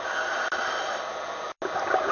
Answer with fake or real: real